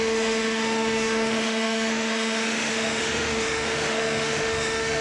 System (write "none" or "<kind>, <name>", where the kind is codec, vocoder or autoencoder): autoencoder, DAC-VAE